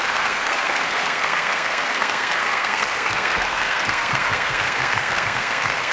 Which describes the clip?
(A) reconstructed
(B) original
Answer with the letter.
A